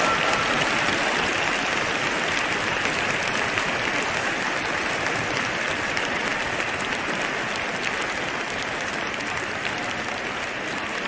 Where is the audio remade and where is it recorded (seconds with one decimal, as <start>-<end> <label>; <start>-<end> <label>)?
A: 0.0-6.3 remade; 6.3-8.6 recorded; 8.6-11.1 remade